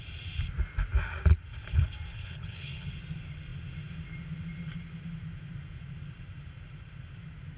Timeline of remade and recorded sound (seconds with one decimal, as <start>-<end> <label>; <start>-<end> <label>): 0.0-2.1 recorded; 2.1-2.9 remade; 2.9-7.6 recorded